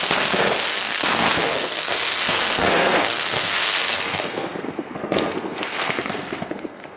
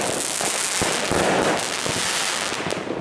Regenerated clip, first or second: first